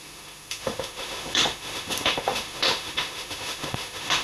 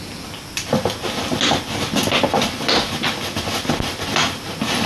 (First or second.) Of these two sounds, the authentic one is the second